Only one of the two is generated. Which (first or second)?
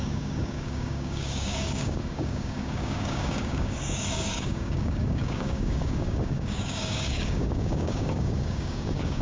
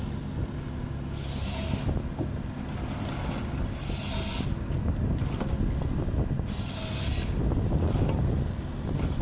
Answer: first